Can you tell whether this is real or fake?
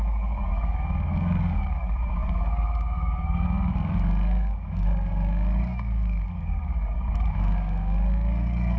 fake